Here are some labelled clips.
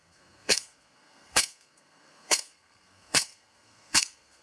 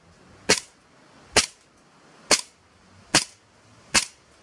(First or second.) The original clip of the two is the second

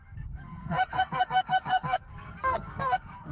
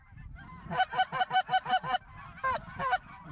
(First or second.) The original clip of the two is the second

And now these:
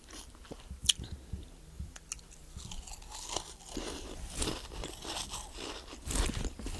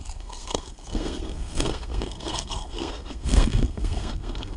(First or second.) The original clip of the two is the first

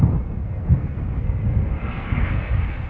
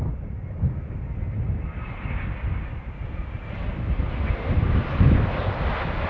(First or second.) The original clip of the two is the second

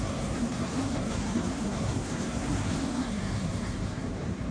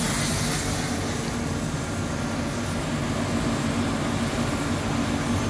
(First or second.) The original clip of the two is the second